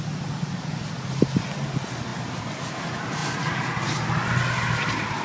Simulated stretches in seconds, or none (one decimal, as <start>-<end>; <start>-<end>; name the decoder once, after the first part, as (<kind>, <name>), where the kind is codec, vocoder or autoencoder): none